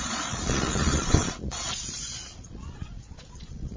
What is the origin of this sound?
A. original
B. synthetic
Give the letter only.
B